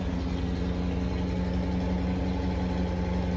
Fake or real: real